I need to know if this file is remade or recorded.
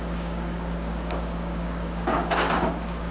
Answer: remade